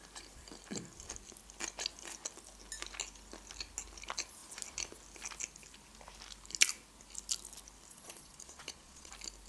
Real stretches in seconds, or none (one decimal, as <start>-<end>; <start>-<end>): 0.0-7.9; 9.1-9.5